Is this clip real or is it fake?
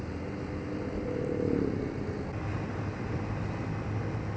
real